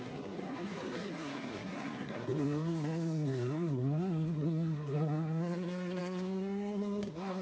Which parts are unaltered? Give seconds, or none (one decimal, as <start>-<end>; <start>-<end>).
none